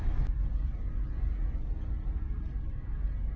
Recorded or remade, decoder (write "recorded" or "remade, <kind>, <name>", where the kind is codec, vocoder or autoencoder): recorded